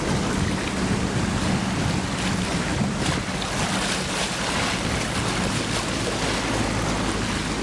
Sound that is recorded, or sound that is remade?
recorded